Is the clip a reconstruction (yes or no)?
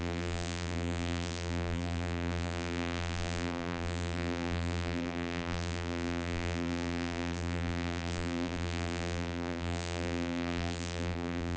yes